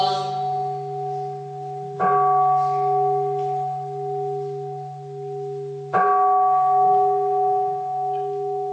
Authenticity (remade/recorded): recorded